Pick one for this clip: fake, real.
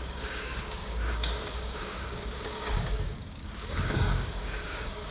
fake